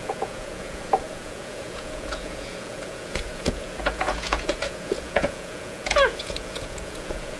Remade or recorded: remade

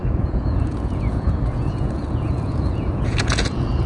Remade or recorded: remade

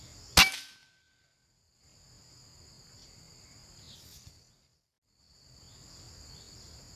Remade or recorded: recorded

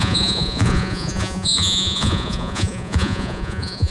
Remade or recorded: remade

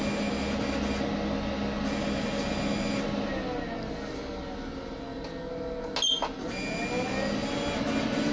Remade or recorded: recorded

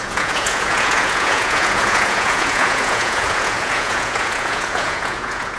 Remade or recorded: remade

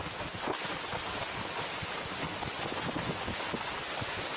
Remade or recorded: recorded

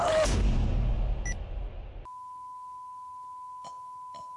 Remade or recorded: recorded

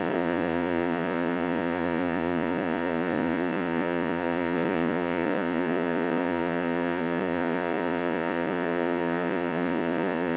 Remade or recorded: remade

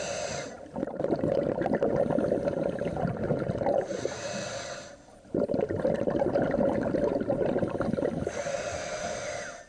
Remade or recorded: recorded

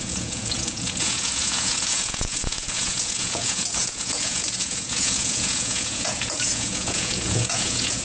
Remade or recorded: remade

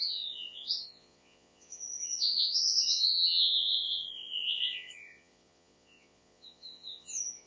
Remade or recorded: remade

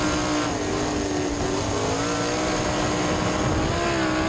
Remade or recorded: recorded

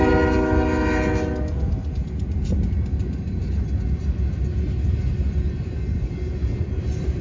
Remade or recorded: recorded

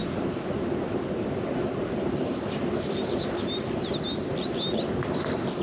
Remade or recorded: recorded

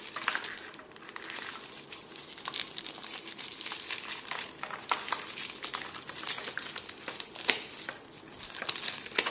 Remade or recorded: recorded